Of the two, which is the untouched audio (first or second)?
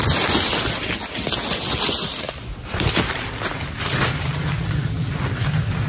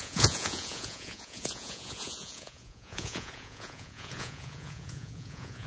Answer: first